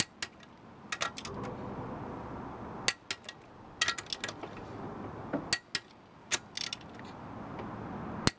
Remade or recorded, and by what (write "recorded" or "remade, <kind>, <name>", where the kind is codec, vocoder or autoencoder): recorded